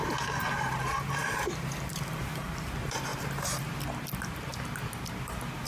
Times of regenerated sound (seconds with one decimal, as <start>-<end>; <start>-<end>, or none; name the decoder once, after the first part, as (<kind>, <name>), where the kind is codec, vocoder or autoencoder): 0.0-4.5 (vocoder, BigVGAN v2); 5.1-5.7